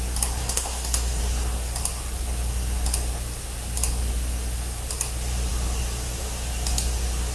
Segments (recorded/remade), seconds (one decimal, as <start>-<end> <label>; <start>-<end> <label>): 0.0-0.4 recorded; 0.4-1.2 remade; 1.2-7.3 recorded